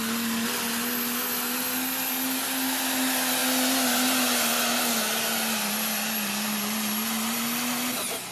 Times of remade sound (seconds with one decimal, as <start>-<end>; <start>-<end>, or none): none